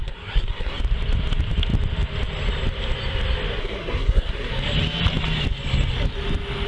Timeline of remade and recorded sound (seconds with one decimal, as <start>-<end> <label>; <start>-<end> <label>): 0.0-0.8 remade; 0.8-3.6 recorded; 3.6-4.5 remade; 4.5-6.7 recorded